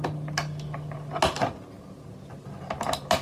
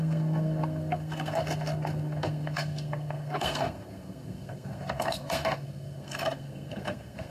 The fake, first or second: second